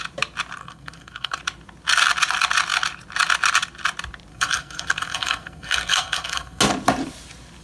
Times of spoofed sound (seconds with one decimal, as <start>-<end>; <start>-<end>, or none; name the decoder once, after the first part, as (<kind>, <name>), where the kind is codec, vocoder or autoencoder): 0.6-1.4 (codec, SNAC); 4.3-6.6